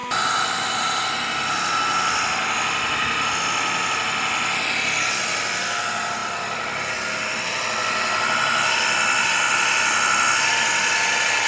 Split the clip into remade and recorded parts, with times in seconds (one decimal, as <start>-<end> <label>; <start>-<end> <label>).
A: 0.0-11.5 recorded